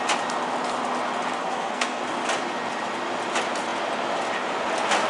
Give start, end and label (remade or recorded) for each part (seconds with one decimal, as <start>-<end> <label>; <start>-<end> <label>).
0.0-1.4 recorded; 1.4-2.0 remade; 2.0-5.1 recorded